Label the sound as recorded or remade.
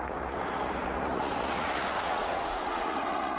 remade